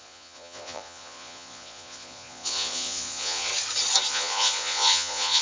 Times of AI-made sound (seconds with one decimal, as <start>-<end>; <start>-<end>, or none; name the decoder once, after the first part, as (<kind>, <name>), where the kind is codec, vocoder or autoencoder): 0.0-3.5 (vocoder, Vocos); 4.1-5.4